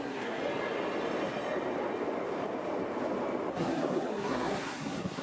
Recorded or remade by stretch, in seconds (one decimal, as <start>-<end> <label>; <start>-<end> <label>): 0.0-0.4 remade; 0.4-3.5 recorded; 3.5-5.2 remade